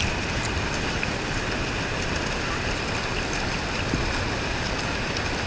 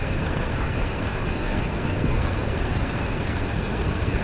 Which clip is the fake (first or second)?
second